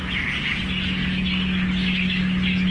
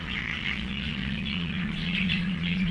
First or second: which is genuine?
first